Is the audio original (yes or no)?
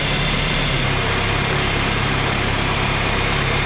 no